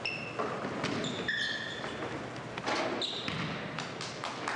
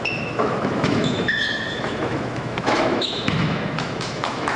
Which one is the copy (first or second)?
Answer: second